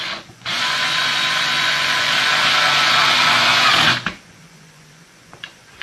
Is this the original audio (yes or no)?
no